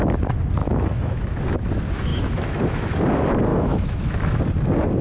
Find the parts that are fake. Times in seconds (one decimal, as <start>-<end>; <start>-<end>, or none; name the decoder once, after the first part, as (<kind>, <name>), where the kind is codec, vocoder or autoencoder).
0.6-1.4 (autoencoder, DAC-VAE); 2.1-3.0; 3.5-4.4